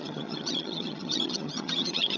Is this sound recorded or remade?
remade